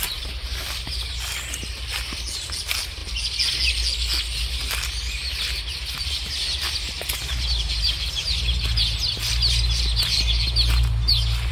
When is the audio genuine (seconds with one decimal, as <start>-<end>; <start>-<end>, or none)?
0.0-11.5